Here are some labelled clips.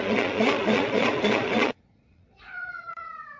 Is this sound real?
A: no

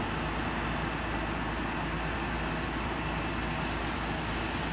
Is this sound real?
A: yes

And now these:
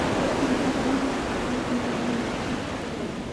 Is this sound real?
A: yes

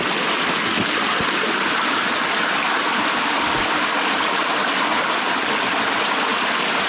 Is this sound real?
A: yes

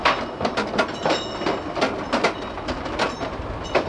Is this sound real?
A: yes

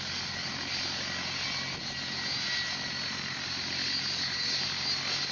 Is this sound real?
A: yes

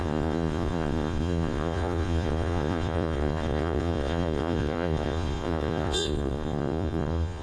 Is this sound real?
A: no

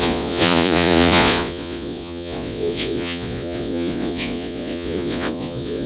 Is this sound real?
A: no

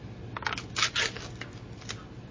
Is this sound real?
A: yes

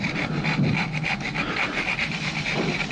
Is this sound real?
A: yes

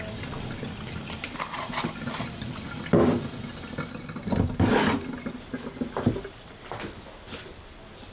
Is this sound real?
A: yes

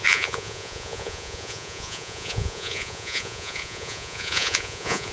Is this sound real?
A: no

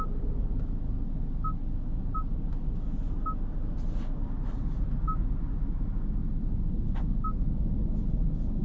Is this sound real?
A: yes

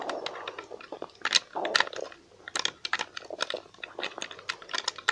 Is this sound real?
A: yes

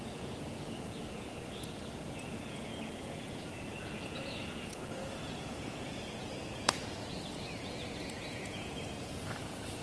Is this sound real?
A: no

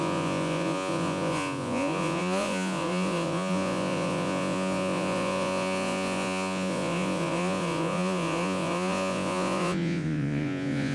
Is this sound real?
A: no